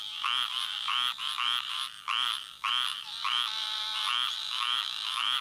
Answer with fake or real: fake